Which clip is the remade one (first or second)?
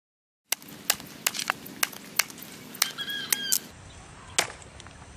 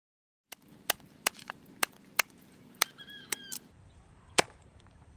second